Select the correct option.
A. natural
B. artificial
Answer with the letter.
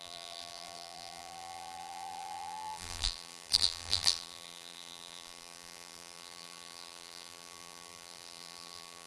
B